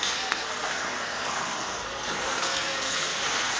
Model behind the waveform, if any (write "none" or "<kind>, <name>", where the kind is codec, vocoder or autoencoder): codec, SNAC